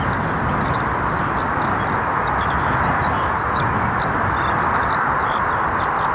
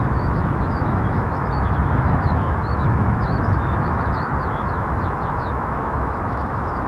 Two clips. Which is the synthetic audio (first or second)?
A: second